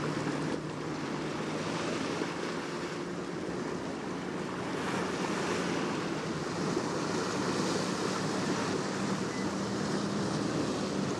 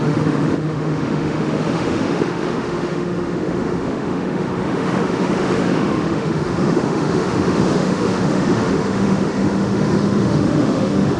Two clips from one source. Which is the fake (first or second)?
second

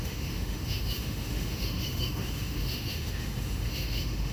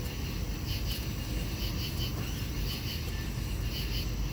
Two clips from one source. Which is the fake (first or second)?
first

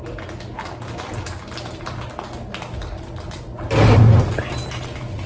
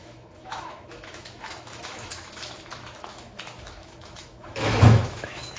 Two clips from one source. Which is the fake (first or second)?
second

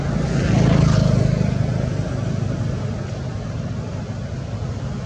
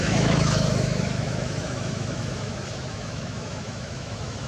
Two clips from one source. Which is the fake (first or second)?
second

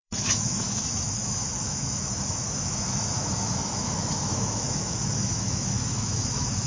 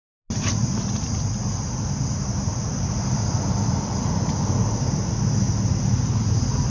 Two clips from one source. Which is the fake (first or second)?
first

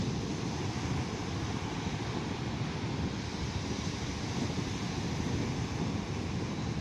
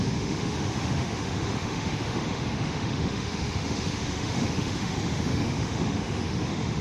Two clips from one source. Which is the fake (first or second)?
second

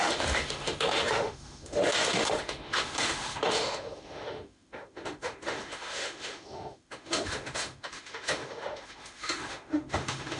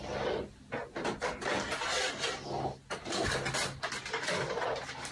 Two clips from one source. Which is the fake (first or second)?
first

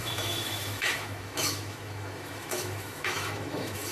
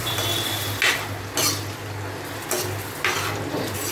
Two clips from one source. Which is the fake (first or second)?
first